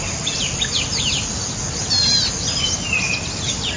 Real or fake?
real